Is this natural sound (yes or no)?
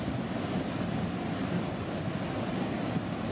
yes